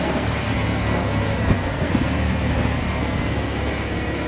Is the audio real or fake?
fake